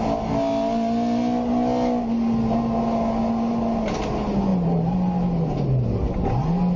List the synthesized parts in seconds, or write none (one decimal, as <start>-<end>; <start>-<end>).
none